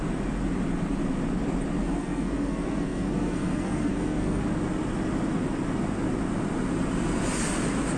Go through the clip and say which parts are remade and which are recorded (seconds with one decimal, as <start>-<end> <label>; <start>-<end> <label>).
0.0-1.8 recorded; 1.8-4.4 remade; 4.4-8.0 recorded